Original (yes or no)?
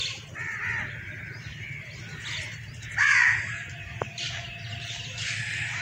yes